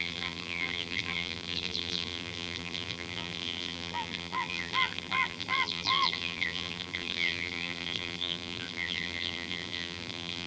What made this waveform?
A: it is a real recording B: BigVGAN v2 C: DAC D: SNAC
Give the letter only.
B